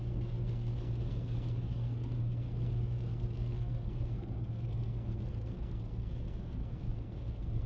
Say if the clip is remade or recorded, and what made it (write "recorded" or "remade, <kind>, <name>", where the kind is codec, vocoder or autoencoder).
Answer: remade, codec, SNAC